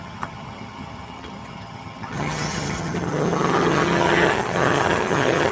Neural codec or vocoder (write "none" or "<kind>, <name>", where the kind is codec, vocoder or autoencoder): vocoder, HiFi-GAN